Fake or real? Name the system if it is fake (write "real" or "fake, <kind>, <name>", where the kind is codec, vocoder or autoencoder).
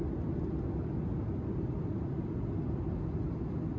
real